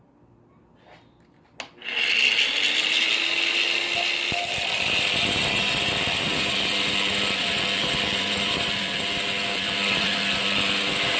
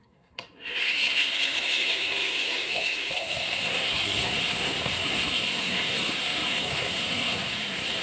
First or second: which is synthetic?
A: second